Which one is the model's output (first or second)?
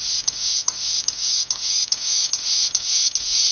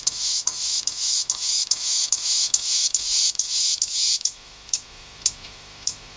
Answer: second